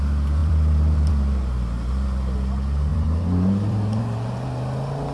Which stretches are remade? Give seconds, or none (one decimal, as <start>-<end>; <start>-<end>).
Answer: 0.4-1.1; 2.9-4.0